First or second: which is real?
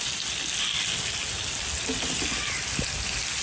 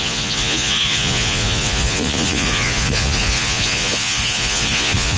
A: first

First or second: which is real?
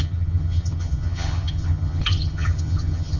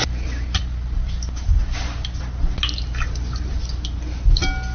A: second